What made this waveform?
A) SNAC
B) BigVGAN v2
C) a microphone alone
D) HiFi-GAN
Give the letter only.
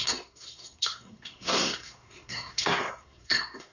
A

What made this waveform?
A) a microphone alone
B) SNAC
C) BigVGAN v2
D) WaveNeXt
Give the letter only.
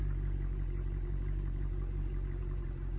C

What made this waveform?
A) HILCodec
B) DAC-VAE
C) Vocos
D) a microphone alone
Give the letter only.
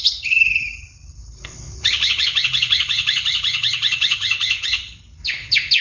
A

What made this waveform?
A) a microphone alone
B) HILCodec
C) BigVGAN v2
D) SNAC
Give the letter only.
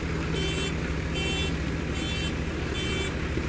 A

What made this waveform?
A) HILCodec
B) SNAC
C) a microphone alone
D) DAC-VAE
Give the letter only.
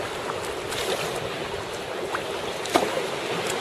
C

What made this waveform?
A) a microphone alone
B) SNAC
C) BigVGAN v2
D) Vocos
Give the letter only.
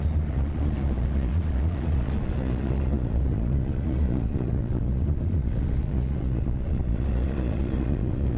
D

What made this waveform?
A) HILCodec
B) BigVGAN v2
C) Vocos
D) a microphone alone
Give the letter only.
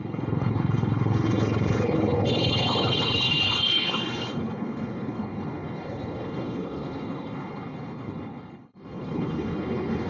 A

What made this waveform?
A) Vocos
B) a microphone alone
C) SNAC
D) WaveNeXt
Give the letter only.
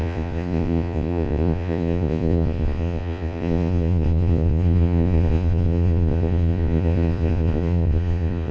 A